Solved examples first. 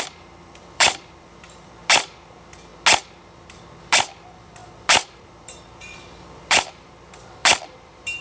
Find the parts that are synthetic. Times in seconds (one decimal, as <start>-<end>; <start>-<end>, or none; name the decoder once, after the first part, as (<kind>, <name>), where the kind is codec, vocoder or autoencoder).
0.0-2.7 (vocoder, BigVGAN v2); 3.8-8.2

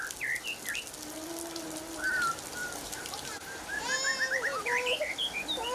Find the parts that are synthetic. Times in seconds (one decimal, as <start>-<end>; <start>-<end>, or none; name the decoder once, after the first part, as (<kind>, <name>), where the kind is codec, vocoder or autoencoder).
2.6-4.9 (vocoder, BigVGAN v2)

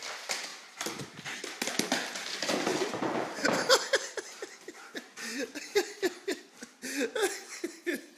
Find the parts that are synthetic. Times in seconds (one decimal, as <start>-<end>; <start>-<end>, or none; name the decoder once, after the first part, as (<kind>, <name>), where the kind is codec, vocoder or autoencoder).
2.7-6.4 (vocoder, BigVGAN v2)

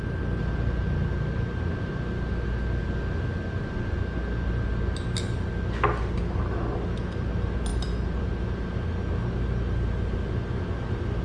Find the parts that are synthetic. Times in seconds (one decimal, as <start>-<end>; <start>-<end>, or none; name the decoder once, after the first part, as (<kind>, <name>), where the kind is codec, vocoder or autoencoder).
7.7-8.2 (vocoder, BigVGAN v2)

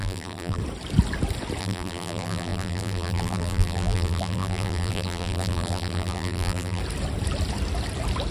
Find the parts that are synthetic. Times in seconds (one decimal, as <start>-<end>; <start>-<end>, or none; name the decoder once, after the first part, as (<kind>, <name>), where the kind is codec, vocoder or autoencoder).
0.0-0.6 (vocoder, BigVGAN v2); 1.6-6.8

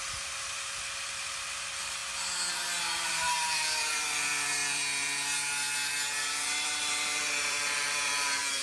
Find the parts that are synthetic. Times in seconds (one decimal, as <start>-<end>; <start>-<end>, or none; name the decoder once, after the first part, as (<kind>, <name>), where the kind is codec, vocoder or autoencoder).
0.0-2.0 (vocoder, BigVGAN v2); 2.8-4.6; 6.2-8.6

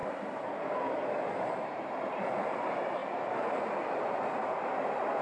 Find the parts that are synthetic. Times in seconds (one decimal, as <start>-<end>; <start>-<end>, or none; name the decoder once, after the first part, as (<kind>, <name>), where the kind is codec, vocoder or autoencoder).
1.4-5.2 (vocoder, BigVGAN v2)

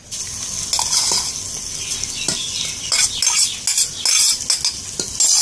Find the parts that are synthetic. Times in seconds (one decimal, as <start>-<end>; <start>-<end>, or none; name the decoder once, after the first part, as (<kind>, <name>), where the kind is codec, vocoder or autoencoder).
none